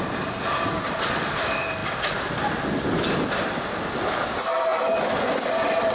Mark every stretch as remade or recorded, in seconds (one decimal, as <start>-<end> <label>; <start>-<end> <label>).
0.0-5.9 recorded

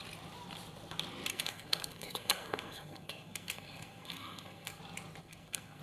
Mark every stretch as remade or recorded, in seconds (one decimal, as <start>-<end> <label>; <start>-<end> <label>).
0.0-1.3 recorded; 1.3-4.8 remade; 4.8-5.2 recorded; 5.2-5.8 remade

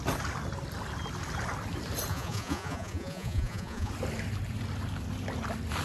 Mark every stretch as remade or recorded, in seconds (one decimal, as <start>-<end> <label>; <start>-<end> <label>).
0.0-2.1 recorded; 2.1-3.9 remade; 3.9-5.8 recorded

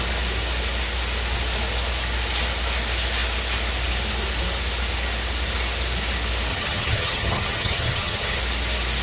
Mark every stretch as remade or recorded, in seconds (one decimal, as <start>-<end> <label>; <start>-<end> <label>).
0.0-6.5 recorded; 6.5-8.4 remade; 8.4-9.0 recorded

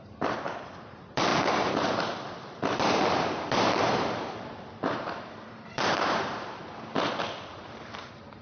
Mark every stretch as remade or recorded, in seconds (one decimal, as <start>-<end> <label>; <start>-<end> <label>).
0.0-6.6 remade; 6.6-7.6 recorded; 7.6-8.4 remade

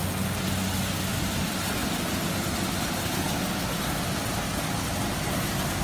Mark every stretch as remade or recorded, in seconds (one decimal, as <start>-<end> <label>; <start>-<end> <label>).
0.0-5.8 recorded

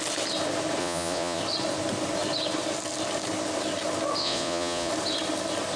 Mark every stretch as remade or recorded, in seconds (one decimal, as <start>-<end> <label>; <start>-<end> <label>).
0.0-0.8 recorded; 0.8-1.4 remade; 1.4-4.2 recorded; 4.2-4.9 remade; 4.9-5.8 recorded